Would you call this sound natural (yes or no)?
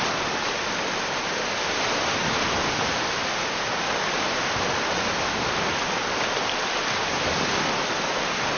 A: yes